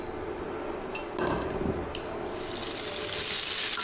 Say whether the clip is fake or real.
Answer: real